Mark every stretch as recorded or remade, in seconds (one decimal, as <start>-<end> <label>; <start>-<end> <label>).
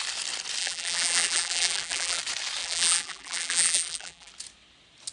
0.0-0.6 recorded; 0.6-2.2 remade; 2.2-2.6 recorded; 2.6-4.3 remade; 4.3-5.1 recorded